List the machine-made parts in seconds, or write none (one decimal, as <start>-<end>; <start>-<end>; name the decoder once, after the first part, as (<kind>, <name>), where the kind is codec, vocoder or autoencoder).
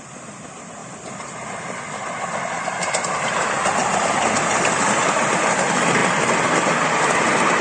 none